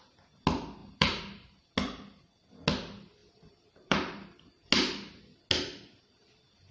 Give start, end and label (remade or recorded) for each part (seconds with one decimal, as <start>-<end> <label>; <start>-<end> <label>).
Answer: 0.0-0.8 recorded; 0.8-1.6 remade; 1.6-3.2 recorded; 3.2-4.7 remade; 4.7-6.7 recorded